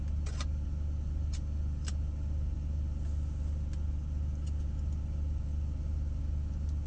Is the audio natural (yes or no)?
yes